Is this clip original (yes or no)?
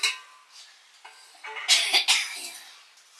yes